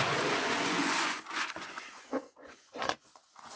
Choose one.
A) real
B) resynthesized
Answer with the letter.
B